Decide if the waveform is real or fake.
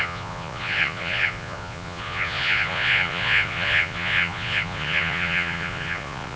fake